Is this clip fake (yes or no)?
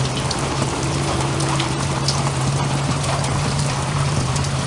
yes